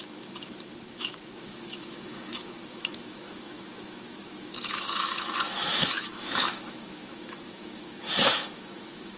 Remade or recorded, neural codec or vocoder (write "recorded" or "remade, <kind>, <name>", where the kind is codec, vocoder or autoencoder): remade, autoencoder, DAC-VAE